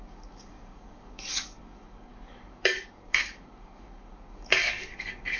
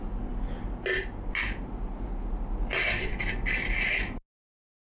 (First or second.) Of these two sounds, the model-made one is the first